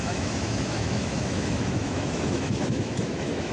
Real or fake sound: fake